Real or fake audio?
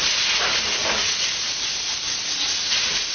real